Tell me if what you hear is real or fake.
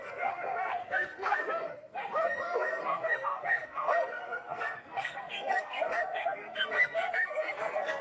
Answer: fake